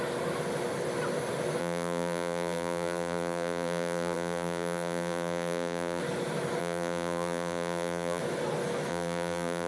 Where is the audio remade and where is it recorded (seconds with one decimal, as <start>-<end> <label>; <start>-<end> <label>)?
0.0-1.6 recorded; 1.6-6.0 remade; 6.0-6.6 recorded; 6.6-8.2 remade; 8.2-8.9 recorded; 8.9-9.7 remade